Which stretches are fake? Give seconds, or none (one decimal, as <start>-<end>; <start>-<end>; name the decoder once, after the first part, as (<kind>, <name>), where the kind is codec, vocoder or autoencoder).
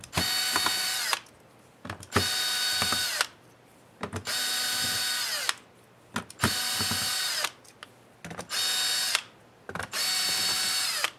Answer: 0.0-5.0 (vocoder, BigVGAN v2); 6.2-7.2; 9.2-11.2